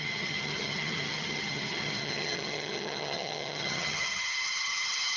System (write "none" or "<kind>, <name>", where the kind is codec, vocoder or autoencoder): vocoder, HiFi-GAN